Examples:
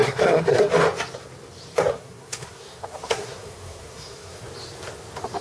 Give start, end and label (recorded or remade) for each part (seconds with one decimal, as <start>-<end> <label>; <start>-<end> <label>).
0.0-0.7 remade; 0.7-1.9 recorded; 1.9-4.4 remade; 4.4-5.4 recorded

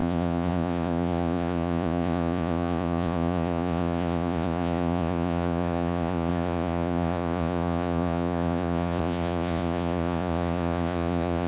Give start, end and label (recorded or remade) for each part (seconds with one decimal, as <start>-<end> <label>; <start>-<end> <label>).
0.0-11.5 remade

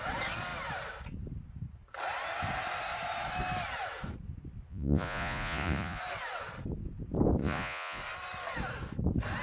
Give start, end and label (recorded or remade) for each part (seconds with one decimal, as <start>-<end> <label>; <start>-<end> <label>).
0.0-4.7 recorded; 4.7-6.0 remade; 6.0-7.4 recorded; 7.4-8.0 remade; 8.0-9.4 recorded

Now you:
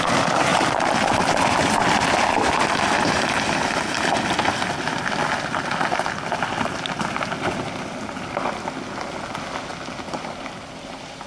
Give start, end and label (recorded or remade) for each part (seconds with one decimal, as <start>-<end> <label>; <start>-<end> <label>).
0.0-0.5 recorded; 0.5-1.2 remade; 1.2-11.3 recorded